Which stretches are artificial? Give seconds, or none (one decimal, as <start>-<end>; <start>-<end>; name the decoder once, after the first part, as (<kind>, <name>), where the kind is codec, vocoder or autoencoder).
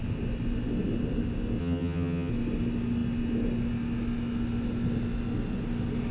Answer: 1.6-2.3 (vocoder, HiFi-GAN)